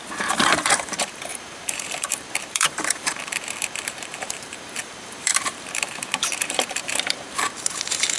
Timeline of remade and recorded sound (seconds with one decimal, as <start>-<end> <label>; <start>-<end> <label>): 0.0-8.2 remade